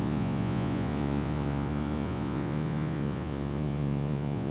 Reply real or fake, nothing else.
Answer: fake